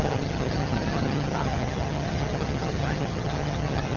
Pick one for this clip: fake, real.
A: fake